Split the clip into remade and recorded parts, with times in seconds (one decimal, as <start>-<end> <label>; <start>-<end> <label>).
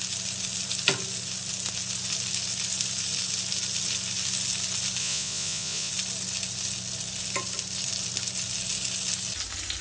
0.0-5.0 recorded; 5.0-5.9 remade; 5.9-9.8 recorded